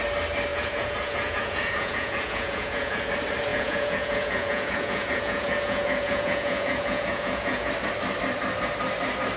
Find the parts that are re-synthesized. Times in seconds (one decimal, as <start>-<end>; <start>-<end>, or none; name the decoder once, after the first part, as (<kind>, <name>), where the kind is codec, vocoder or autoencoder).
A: 0.5-3.1 (vocoder, Vocos); 3.5-7.7